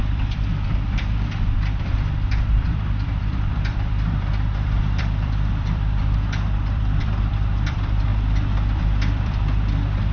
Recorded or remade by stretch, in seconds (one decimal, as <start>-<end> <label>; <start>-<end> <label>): 0.0-10.1 remade